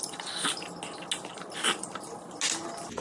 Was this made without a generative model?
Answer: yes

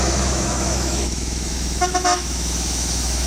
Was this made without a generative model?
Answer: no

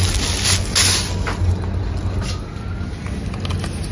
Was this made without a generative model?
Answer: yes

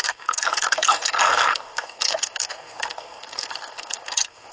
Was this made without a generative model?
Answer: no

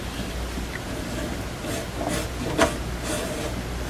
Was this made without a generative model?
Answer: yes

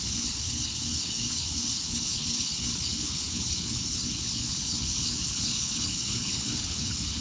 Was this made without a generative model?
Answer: no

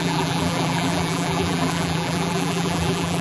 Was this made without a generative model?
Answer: no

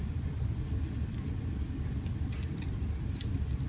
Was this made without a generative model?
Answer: yes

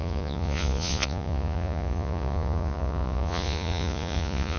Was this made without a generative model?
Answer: no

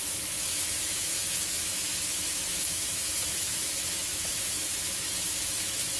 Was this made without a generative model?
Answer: no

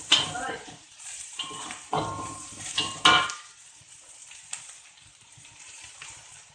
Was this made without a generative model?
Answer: no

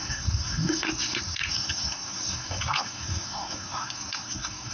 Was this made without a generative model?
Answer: no